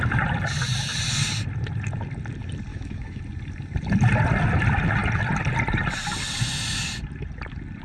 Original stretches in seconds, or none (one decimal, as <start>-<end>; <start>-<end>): 0.0-2.7; 3.2-7.8